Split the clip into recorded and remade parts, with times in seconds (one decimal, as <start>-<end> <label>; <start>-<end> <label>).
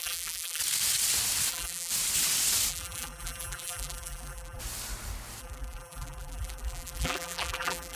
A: 0.0-0.6 remade; 0.6-1.5 recorded; 1.5-1.9 remade; 1.9-2.7 recorded; 2.7-4.6 remade; 4.6-5.4 recorded; 5.4-8.0 remade